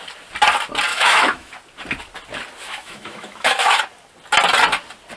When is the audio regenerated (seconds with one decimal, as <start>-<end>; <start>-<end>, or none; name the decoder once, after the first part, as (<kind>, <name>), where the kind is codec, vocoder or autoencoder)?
0.9-1.5 (autoencoder, DAC-VAE); 2.6-3.8